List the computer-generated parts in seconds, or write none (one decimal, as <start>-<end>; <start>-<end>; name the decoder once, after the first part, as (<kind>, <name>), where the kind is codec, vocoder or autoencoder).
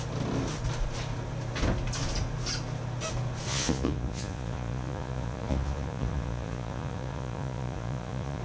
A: 3.5-8.4 (vocoder, Vocos)